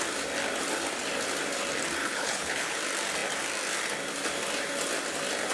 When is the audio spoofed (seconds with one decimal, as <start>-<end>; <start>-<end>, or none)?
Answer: 2.0-2.8